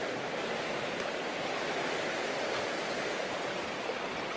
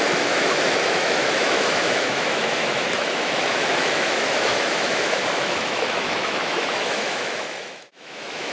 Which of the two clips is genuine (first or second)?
first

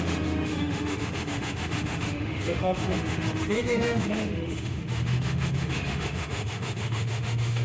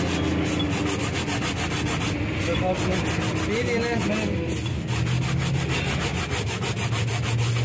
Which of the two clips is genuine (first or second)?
second